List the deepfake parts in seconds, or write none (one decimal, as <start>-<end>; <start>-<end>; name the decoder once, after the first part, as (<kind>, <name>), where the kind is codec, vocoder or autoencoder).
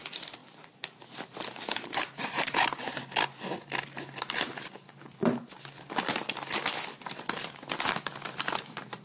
0.4-2.9 (vocoder, BigVGAN v2)